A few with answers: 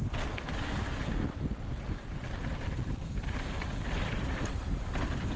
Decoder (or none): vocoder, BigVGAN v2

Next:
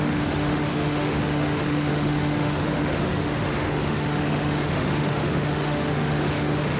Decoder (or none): autoencoder, DAC-VAE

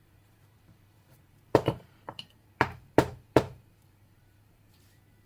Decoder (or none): vocoder, BigVGAN v2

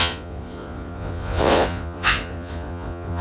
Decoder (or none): vocoder, Vocos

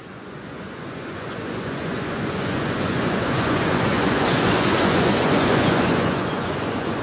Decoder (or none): vocoder, Vocos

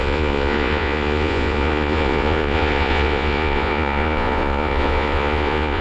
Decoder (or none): vocoder, Vocos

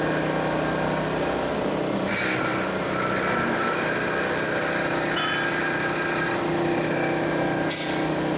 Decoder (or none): none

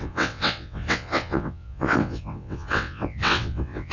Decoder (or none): vocoder, WaveNeXt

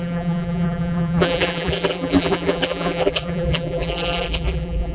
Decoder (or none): vocoder, BigVGAN v2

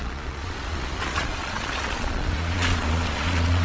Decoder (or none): vocoder, Vocos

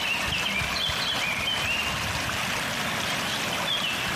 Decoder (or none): none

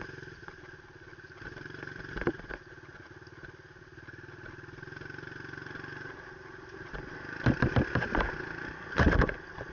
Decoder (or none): none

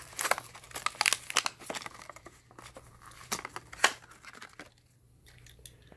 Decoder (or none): none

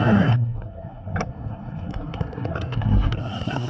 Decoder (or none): codec, SNAC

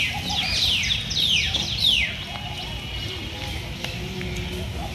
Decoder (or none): none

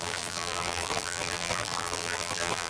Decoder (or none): vocoder, BigVGAN v2